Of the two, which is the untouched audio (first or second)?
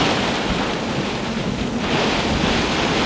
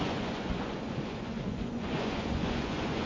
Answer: first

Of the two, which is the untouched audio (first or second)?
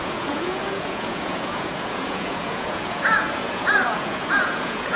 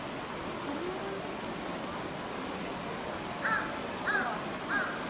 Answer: second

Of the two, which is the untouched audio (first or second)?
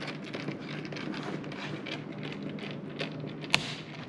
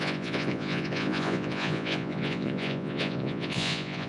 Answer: first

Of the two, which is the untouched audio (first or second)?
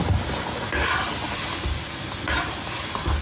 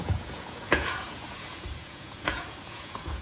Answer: first